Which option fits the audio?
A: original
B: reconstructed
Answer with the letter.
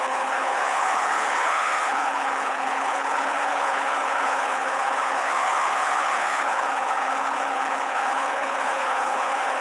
B